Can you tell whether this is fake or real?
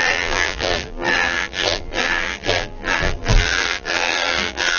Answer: fake